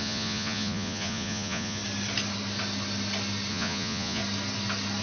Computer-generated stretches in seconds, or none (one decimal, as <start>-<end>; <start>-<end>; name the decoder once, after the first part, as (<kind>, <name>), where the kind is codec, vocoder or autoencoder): 0.0-1.8 (vocoder, Vocos); 3.5-4.2